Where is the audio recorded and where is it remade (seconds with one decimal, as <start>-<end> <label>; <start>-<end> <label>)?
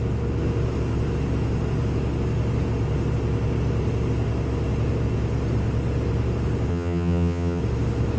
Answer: 0.0-6.7 recorded; 6.7-7.6 remade; 7.6-8.2 recorded